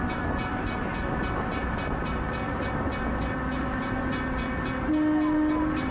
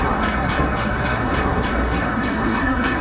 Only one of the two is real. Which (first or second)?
first